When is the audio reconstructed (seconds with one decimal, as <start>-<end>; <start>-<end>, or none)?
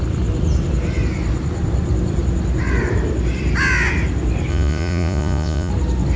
4.5-5.7